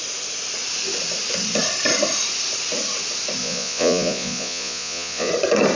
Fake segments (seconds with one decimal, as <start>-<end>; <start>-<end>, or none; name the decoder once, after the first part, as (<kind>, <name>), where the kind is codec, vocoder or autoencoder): 3.4-5.3 (vocoder, Vocos)